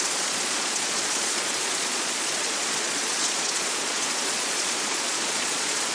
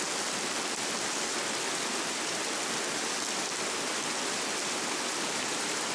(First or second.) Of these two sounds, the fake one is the first